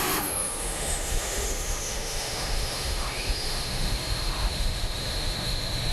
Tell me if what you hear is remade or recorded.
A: remade